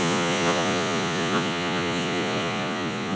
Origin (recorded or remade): remade